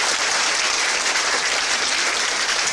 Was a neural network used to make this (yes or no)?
yes